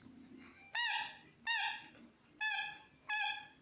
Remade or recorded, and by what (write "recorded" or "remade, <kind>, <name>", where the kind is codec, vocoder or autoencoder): recorded